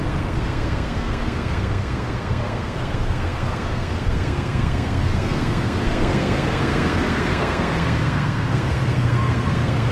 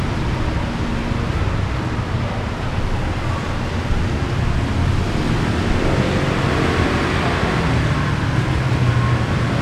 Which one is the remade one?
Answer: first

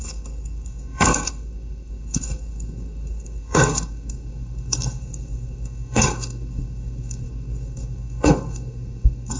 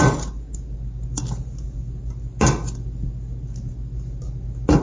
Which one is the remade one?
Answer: first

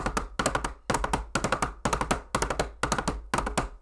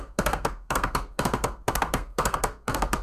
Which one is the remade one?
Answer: second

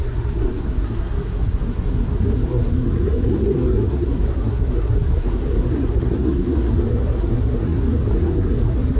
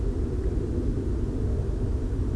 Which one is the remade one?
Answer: first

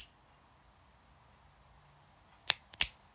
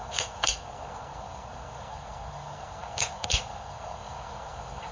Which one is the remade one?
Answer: second